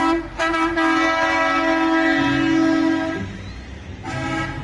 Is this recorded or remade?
recorded